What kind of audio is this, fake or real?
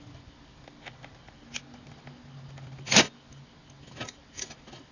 real